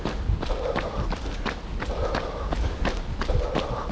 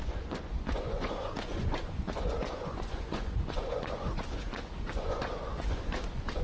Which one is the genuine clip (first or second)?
first